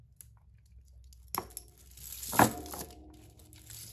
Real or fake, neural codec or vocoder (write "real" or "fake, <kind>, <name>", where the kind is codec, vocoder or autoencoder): real